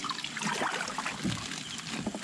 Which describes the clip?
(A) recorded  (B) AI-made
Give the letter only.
A